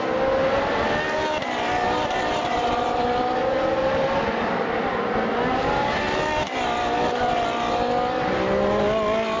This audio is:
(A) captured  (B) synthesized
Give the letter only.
A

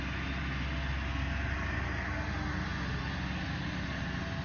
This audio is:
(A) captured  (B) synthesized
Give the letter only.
A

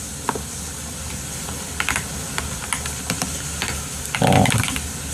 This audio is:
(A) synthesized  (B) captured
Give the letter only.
B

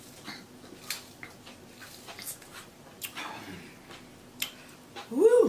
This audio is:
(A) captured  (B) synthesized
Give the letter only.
A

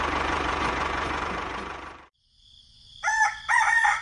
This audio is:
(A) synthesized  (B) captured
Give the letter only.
A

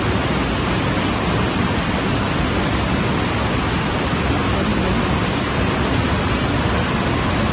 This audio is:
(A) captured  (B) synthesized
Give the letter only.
A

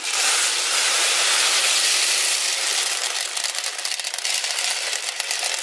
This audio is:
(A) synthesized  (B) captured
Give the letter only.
B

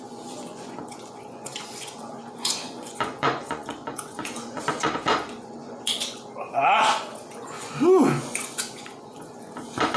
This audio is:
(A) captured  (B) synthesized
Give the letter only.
B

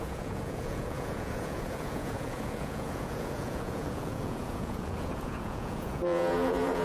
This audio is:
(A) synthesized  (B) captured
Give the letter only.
A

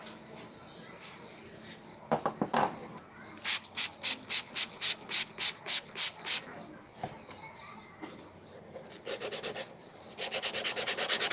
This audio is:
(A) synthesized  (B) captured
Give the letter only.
B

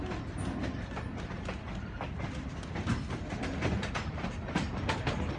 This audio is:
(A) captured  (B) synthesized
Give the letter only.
A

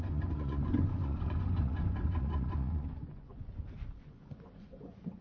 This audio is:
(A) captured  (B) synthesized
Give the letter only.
B